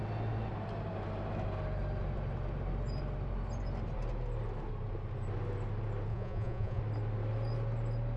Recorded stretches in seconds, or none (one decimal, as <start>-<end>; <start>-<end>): 0.0-6.1; 6.8-8.2